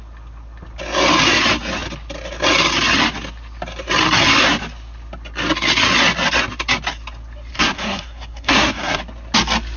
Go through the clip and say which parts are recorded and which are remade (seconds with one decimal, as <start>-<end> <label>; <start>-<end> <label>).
0.0-7.5 recorded; 7.5-9.0 remade; 9.0-9.8 recorded